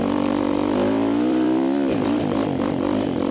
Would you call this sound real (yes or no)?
no